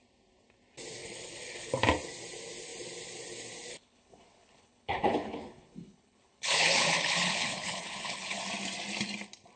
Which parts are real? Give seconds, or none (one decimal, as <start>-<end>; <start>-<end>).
0.0-1.0; 1.8-3.7; 8.4-9.6